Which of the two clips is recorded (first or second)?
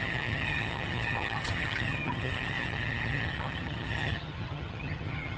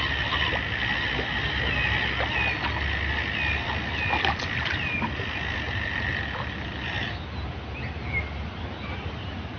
second